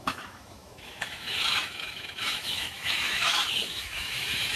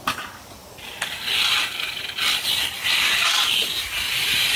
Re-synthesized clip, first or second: first